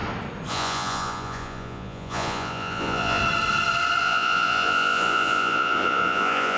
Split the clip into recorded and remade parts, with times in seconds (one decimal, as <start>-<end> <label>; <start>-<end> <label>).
0.0-0.5 recorded; 0.5-3.2 remade; 3.2-4.0 recorded; 4.0-6.6 remade